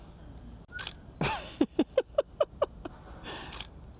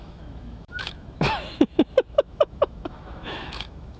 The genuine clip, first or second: first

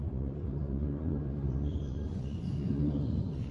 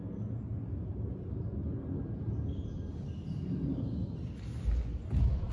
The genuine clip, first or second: second